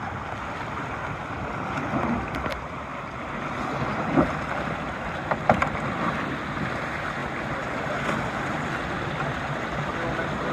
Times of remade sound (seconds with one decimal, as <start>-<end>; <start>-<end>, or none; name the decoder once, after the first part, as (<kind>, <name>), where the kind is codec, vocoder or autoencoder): none